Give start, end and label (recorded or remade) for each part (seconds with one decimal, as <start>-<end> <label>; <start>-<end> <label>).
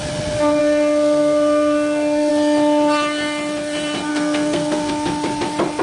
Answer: 0.0-0.6 recorded; 0.6-2.3 remade; 2.3-4.1 recorded; 4.1-4.9 remade; 4.9-5.8 recorded